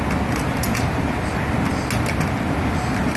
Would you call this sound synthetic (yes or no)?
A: no